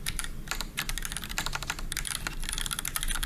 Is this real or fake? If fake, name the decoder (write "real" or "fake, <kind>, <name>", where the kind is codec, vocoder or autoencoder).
fake, vocoder, BigVGAN v2